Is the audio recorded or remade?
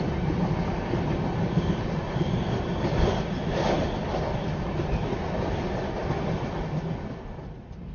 recorded